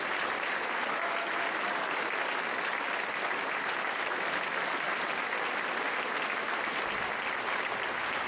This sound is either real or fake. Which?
real